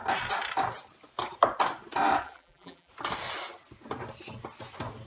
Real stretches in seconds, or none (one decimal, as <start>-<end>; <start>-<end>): 0.0-2.2; 2.9-5.1